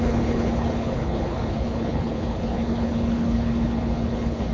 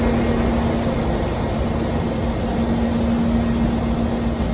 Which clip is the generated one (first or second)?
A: first